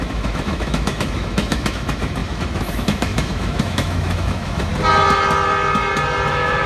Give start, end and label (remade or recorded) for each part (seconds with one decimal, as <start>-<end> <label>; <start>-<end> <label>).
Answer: 0.0-4.7 remade; 4.7-6.3 recorded; 6.3-6.7 remade